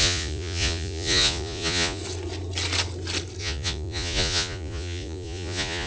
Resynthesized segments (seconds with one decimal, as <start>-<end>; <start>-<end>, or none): 0.0-2.0; 3.4-5.9